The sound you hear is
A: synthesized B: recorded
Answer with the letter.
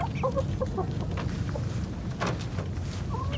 B